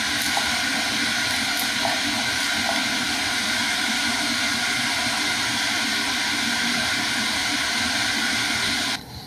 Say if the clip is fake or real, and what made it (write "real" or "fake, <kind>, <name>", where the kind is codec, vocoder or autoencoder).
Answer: real